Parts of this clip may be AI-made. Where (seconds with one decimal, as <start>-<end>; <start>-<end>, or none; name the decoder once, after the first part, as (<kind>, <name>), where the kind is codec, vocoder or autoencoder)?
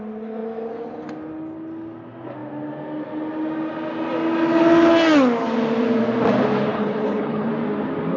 6.7-7.5 (codec, HILCodec)